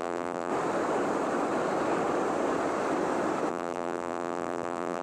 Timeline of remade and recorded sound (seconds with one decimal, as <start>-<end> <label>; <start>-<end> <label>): 0.0-0.5 remade; 0.5-3.5 recorded; 3.5-5.0 remade

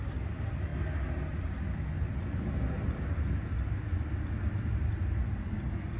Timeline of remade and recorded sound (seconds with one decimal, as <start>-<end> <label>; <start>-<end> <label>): 0.0-6.0 recorded

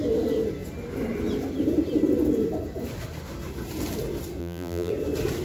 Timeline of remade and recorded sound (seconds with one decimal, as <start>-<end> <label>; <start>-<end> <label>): 0.0-4.4 recorded; 4.4-4.9 remade; 4.9-5.4 recorded

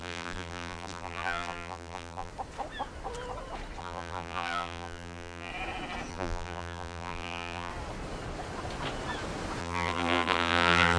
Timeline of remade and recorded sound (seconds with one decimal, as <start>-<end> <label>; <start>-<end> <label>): 0.0-2.3 remade; 2.3-3.8 recorded; 3.8-5.5 remade; 5.5-6.1 recorded; 6.1-7.7 remade; 7.7-9.6 recorded; 9.6-11.0 remade

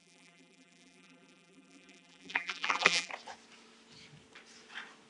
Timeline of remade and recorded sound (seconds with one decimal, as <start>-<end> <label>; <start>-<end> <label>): 0.0-3.1 remade; 3.1-5.1 recorded

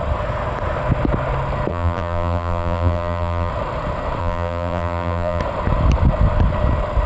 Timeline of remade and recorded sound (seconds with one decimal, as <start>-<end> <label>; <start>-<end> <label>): 0.0-1.7 recorded; 1.7-3.5 remade; 3.5-4.2 recorded; 4.2-5.4 remade; 5.4-7.1 recorded

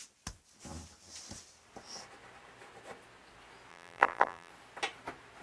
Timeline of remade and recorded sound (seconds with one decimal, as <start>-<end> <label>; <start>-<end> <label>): 0.0-3.7 recorded; 3.7-4.5 remade; 4.5-5.4 recorded